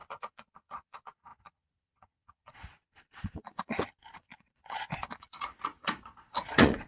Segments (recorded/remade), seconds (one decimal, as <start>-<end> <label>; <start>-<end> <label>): 0.0-6.9 remade